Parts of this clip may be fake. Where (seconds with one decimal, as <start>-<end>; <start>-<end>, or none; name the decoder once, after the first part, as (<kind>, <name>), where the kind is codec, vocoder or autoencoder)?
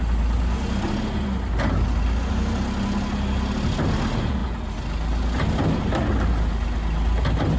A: none